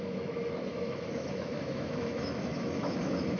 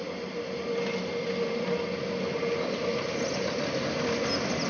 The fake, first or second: first